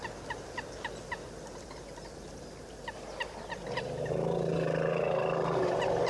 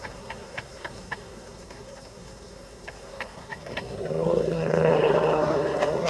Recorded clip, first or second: first